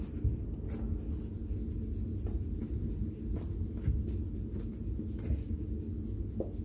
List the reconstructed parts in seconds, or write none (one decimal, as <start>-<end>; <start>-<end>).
none